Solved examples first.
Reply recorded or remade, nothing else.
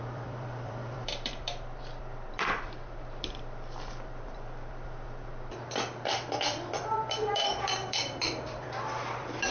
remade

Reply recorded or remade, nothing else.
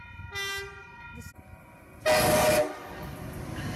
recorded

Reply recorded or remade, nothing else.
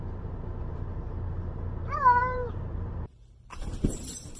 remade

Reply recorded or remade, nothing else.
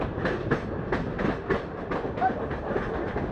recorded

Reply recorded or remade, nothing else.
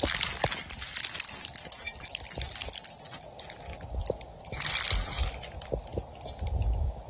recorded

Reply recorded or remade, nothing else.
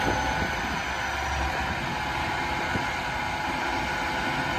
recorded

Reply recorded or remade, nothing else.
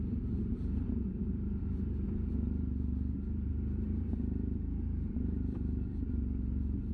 remade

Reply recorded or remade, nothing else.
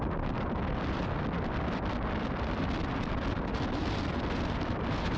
remade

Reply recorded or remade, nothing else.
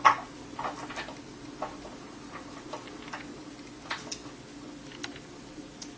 recorded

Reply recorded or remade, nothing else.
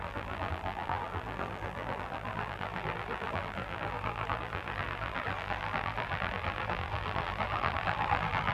remade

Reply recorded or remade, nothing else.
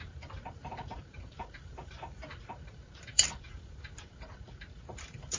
remade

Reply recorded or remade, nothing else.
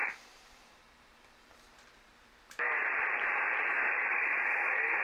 remade